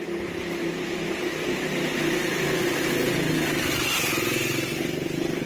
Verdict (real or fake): real